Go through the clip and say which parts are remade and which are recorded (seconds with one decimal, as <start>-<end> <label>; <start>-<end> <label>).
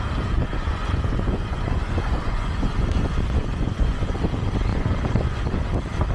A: 0.0-0.5 recorded; 0.5-4.2 remade; 4.2-4.7 recorded; 4.7-5.6 remade; 5.6-6.1 recorded